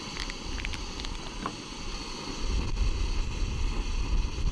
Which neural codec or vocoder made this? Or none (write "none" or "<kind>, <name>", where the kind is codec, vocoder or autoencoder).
none